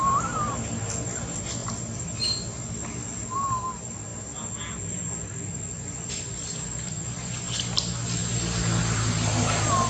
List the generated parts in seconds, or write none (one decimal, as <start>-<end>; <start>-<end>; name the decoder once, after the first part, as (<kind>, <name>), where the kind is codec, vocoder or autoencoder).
none